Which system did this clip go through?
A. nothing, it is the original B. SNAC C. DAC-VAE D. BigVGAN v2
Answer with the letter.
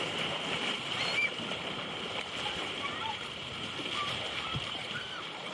D